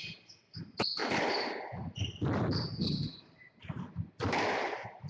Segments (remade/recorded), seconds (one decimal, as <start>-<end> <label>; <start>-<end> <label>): 0.0-5.1 recorded